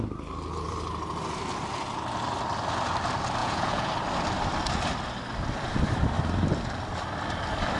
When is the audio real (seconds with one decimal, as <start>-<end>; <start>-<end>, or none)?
0.0-3.4; 3.9-7.8

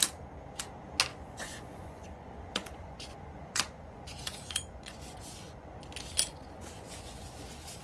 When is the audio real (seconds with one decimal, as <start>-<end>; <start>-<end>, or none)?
0.0-1.1; 5.8-6.3

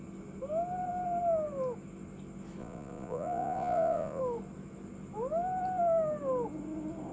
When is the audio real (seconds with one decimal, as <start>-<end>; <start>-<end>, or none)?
0.0-2.6; 4.2-7.1

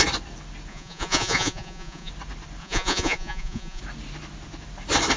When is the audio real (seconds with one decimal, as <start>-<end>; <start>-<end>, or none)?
0.0-0.7; 2.1-2.6; 3.8-5.2

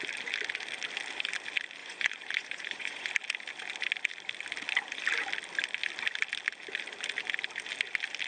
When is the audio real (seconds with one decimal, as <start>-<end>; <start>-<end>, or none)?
0.0-1.8; 3.1-8.3

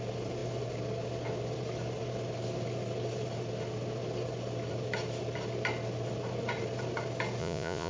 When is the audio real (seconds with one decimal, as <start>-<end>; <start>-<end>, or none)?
0.0-7.4

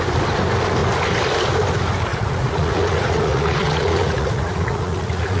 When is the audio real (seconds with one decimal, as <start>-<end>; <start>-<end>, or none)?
0.0-2.1

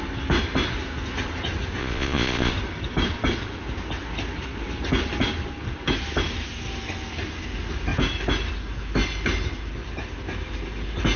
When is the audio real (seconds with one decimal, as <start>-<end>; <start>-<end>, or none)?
0.0-1.8; 2.5-11.2